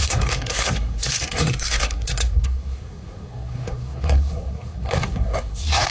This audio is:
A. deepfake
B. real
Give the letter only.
A